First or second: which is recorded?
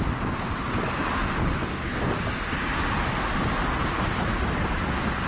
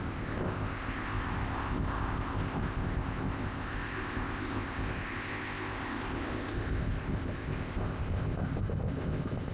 first